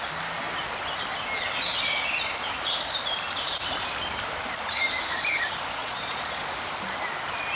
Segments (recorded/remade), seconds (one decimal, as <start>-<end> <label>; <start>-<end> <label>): 0.0-5.8 recorded; 5.8-6.5 remade; 6.5-7.6 recorded